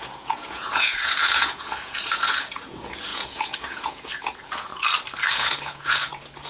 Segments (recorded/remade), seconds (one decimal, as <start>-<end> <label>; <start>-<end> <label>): 0.0-4.7 remade; 4.7-5.3 recorded; 5.3-6.5 remade

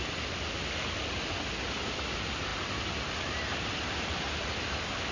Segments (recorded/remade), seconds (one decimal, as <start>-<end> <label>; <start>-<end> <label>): 0.0-5.1 recorded

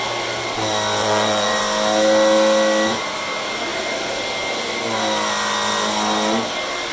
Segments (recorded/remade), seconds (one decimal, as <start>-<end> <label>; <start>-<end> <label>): 0.0-1.0 recorded; 1.0-1.6 remade; 1.6-6.9 recorded